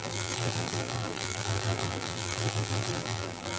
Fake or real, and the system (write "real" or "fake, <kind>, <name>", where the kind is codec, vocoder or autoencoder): fake, vocoder, BigVGAN v2